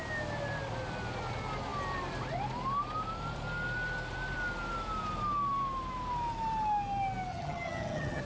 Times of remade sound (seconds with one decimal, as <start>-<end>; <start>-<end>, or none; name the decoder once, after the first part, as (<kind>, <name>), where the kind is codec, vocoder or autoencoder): 7.3-8.2 (vocoder, HiFi-GAN)